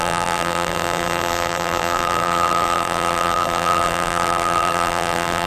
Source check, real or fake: fake